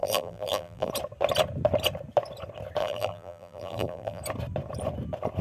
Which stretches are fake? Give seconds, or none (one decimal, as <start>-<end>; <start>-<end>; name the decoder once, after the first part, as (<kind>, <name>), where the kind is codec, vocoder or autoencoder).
0.0-0.9 (vocoder, BigVGAN v2); 2.8-4.2